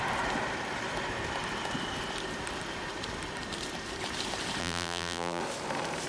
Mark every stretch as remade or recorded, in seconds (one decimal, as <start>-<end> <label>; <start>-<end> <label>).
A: 0.0-4.6 recorded; 4.6-5.4 remade; 5.4-6.1 recorded